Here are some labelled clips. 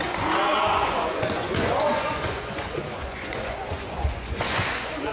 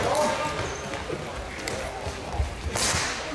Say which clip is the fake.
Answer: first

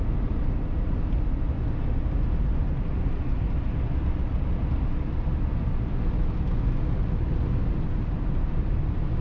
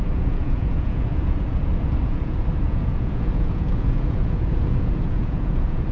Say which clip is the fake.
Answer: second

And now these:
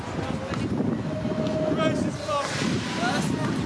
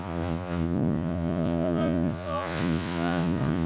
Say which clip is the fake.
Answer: second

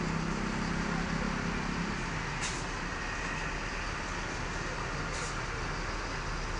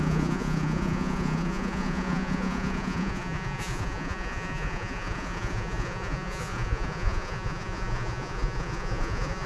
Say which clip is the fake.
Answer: second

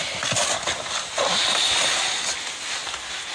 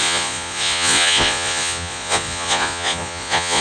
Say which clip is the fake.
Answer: second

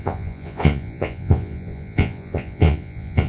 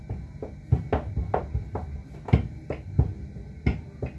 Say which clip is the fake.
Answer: first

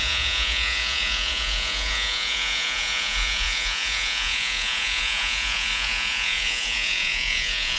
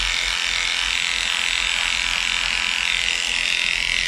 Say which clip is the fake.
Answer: first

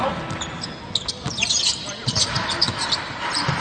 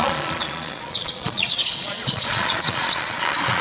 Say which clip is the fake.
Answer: second